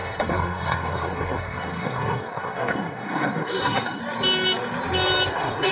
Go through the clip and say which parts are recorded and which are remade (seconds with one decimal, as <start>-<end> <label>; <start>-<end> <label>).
0.0-4.0 remade; 4.0-5.3 recorded; 5.3-5.7 remade